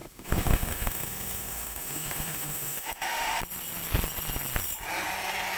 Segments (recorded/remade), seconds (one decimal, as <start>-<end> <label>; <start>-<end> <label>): 0.0-3.4 remade; 3.4-5.6 recorded